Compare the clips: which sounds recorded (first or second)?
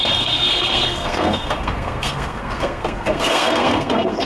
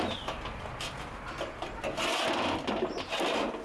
second